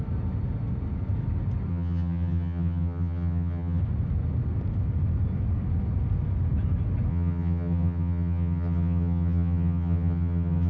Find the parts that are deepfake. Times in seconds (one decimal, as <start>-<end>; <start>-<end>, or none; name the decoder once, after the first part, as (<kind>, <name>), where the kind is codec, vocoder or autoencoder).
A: 1.7-3.8 (vocoder, HiFi-GAN); 7.1-10.7